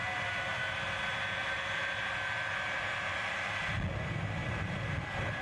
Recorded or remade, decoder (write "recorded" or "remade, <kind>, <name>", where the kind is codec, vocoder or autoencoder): recorded